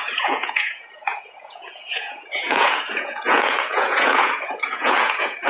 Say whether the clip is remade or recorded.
remade